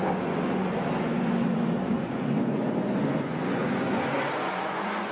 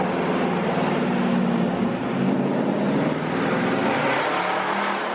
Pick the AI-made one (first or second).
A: first